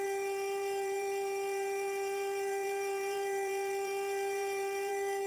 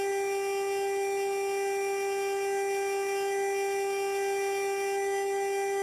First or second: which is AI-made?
first